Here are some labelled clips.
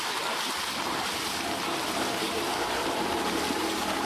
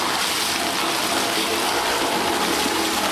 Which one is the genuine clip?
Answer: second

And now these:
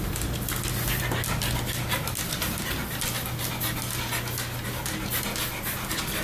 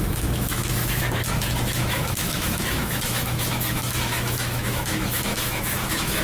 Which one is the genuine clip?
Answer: first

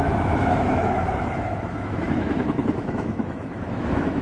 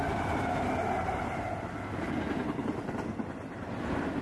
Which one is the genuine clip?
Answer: second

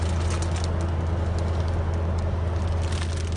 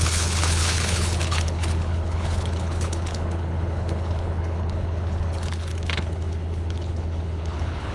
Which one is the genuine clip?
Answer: first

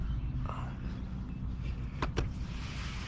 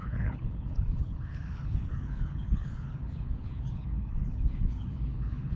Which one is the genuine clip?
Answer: first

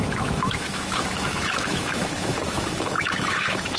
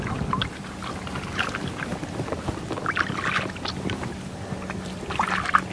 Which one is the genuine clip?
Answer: second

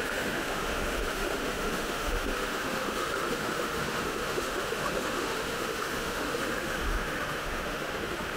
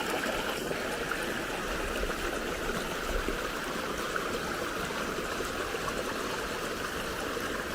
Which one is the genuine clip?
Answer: second